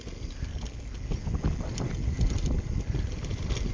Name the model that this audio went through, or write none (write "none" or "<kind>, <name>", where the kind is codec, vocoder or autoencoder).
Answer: none